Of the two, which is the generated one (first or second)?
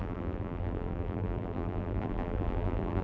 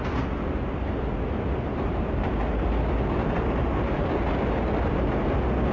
first